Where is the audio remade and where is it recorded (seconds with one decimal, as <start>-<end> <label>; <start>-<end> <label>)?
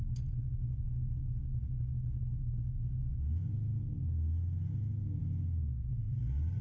0.0-6.6 recorded